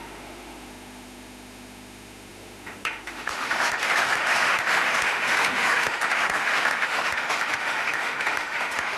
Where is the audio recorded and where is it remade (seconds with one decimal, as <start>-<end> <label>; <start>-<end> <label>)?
0.0-9.0 remade